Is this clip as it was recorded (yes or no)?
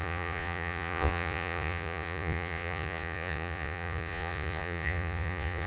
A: no